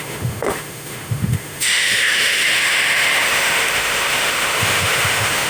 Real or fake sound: fake